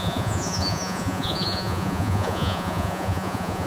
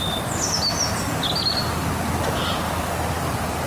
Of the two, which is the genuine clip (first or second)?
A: second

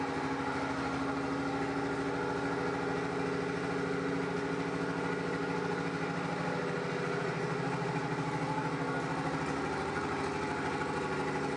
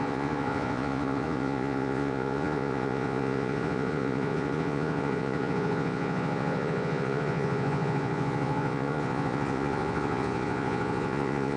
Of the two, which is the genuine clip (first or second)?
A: first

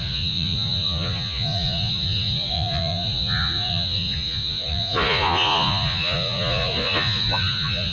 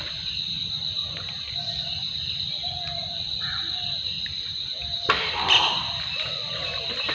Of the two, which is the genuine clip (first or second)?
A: second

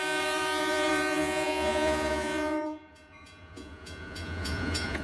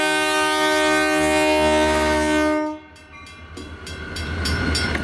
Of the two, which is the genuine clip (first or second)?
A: second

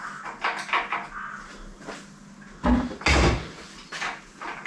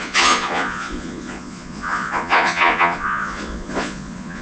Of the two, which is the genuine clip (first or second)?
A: first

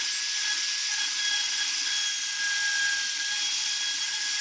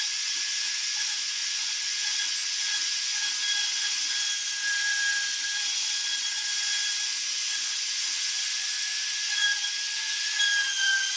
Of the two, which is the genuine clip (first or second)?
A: first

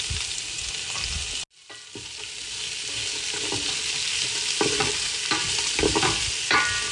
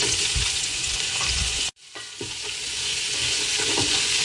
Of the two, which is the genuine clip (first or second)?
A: first